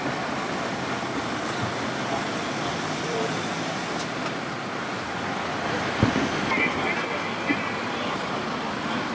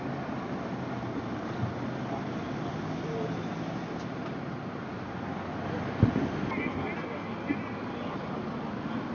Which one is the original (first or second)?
second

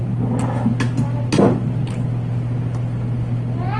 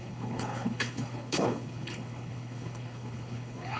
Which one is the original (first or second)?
first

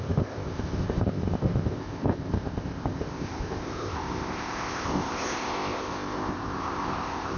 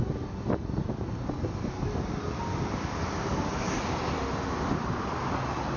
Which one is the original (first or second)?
second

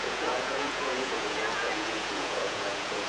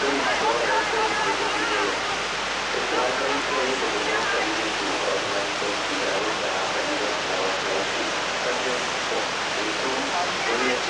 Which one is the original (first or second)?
second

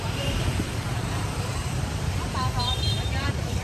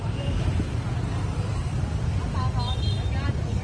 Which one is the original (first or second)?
second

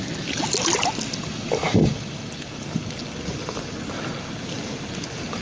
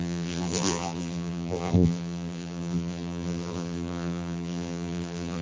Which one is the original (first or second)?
first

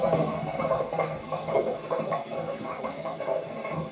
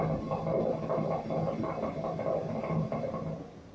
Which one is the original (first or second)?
second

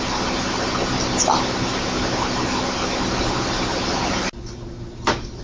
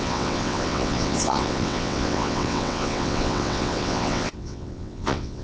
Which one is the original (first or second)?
first